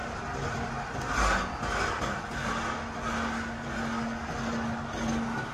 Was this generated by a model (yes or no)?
no